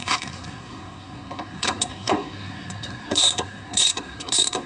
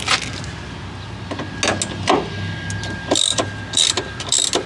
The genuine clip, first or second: second